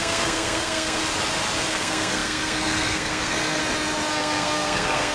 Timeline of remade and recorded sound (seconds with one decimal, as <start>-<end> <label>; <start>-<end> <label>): 0.0-1.0 remade; 1.0-1.7 recorded; 1.7-3.6 remade; 3.6-4.1 recorded; 4.1-5.1 remade